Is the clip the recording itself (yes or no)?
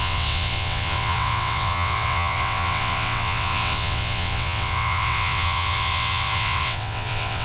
no